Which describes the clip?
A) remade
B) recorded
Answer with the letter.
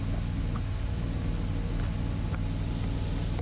B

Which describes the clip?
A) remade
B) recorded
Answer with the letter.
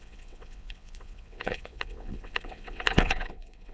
A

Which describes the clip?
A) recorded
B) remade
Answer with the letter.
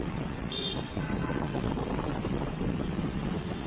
B